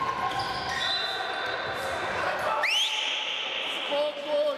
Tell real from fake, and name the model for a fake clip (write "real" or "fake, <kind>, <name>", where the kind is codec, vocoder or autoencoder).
real